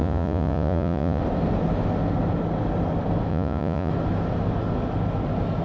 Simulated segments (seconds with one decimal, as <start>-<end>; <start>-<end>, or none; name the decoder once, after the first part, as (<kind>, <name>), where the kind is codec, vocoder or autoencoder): 0.0-1.2 (vocoder, Vocos); 3.3-3.9